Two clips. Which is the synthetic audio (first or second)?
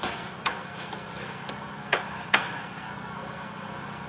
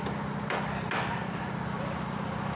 first